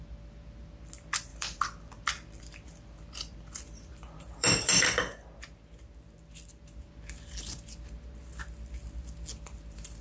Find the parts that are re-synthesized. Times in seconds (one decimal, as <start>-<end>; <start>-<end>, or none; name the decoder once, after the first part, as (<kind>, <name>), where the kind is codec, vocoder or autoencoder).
1.3-4.8 (vocoder, BigVGAN v2)